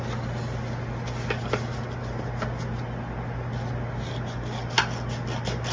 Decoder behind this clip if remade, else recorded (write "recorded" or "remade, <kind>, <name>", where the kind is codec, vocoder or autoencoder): recorded